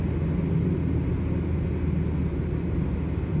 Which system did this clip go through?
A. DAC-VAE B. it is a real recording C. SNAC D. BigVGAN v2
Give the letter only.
B